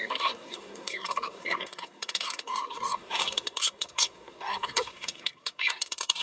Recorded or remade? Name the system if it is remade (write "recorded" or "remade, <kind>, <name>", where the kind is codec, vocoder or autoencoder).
remade, codec, SNAC